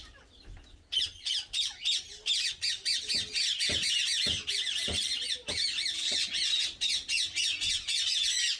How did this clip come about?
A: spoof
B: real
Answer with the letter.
B